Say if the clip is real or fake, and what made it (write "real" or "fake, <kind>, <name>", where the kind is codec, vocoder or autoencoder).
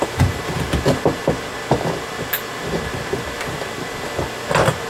real